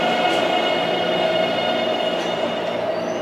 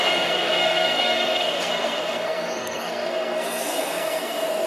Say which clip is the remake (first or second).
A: second